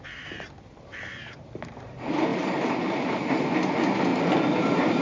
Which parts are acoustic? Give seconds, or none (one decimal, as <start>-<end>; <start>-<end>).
2.3-2.8; 4.1-4.6